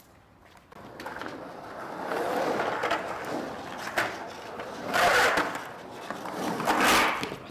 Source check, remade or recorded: recorded